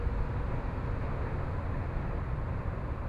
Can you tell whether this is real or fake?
real